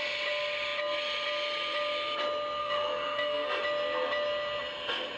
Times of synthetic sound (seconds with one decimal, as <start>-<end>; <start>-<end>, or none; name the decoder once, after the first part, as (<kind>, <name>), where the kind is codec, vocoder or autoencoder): 2.6-3.6 (codec, SNAC)